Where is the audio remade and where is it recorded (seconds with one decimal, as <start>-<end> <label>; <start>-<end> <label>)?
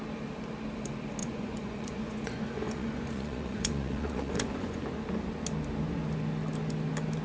0.0-1.2 recorded; 1.2-4.8 remade; 4.8-7.2 recorded